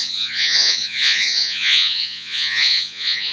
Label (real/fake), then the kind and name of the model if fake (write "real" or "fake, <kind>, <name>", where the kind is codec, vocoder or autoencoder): fake, vocoder, Vocos